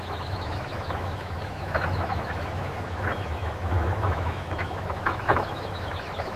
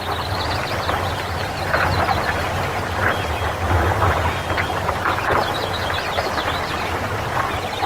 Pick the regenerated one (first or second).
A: first